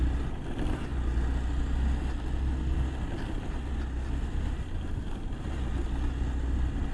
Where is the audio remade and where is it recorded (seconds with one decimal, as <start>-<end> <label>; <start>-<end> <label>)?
0.0-6.9 recorded